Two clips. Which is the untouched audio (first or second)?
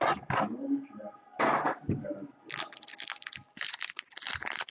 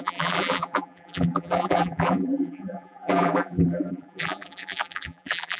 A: first